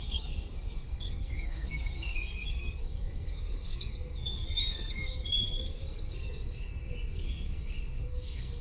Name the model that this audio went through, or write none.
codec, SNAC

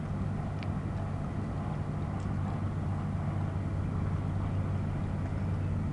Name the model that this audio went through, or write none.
none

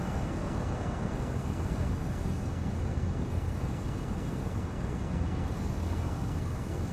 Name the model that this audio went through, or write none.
codec, SNAC